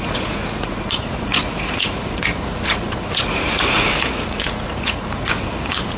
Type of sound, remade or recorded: remade